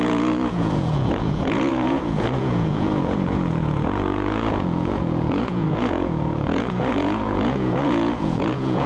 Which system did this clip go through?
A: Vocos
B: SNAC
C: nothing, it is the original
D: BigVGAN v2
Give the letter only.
A